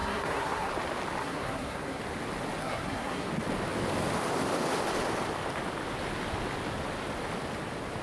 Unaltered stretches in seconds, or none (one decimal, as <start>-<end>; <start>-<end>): 0.7-1.2; 2.0-2.6; 3.3-8.0

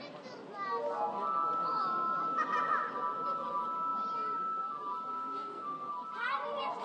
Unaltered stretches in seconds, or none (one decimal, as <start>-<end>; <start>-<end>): 0.0-5.1; 5.9-6.8

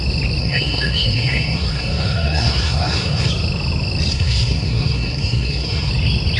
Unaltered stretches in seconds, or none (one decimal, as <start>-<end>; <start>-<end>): 0.0-0.4; 3.3-4.1; 5.9-6.4

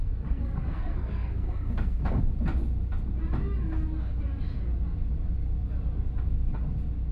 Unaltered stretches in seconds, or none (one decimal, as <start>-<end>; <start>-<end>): 2.2-7.1

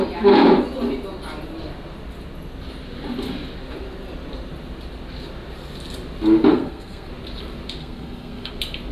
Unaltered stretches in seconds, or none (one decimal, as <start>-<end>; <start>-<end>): 0.0-6.5; 7.1-7.8; 8.5-8.9

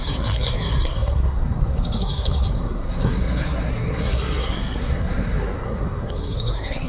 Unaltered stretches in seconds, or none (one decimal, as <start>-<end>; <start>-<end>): none